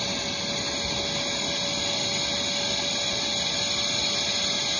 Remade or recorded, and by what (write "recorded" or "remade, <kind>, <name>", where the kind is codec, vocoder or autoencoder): recorded